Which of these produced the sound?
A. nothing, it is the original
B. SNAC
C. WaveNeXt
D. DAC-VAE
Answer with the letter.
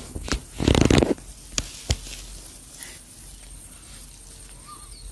A